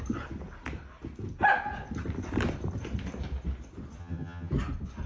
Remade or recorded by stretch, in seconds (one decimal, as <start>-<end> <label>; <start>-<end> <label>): 0.0-4.0 recorded; 4.0-4.5 remade; 4.5-5.1 recorded